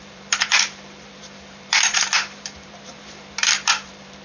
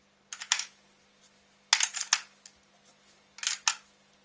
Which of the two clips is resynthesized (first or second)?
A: first